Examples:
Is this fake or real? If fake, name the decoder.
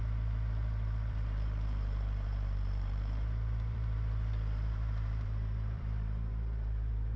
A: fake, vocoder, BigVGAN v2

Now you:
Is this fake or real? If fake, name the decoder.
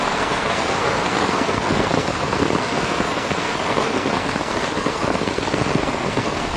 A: fake, codec, SNAC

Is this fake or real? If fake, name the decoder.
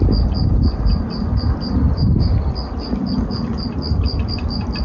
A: real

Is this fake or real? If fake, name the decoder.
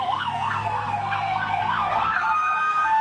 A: fake, codec, SNAC